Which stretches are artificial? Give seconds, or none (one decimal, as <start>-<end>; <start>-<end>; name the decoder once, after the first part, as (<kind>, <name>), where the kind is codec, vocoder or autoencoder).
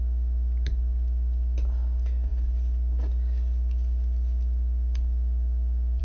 none